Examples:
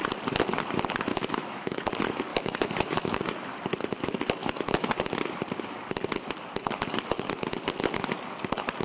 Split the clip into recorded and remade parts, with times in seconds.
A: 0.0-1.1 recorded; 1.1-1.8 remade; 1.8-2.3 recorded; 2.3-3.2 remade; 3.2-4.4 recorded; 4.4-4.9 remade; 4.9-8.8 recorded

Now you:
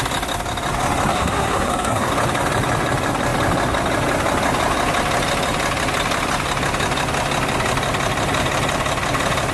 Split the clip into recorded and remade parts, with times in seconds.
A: 0.0-1.1 recorded; 1.1-2.1 remade; 2.1-9.5 recorded

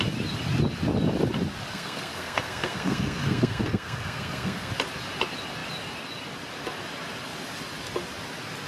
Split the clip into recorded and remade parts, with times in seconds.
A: 0.0-1.7 recorded; 1.7-4.7 remade; 4.7-8.7 recorded

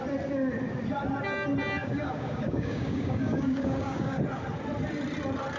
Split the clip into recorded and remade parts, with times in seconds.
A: 0.0-1.8 recorded; 1.8-4.2 remade; 4.2-5.6 recorded

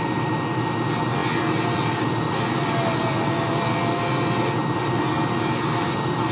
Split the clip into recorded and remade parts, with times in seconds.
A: 0.0-6.3 recorded

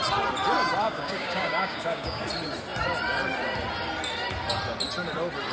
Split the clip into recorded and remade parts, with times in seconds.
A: 0.0-0.8 recorded; 0.8-2.2 remade; 2.2-5.5 recorded

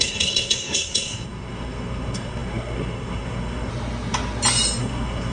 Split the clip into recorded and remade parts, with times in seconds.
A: 0.0-3.7 remade; 3.7-4.8 recorded; 4.8-5.3 remade